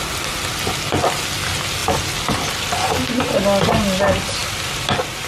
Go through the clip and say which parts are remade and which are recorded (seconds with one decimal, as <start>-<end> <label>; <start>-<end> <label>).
0.0-5.3 recorded